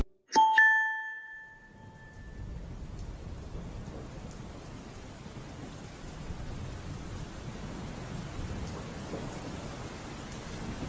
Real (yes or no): yes